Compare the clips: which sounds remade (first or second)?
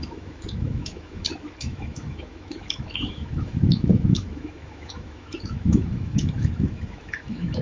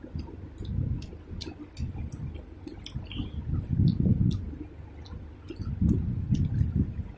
first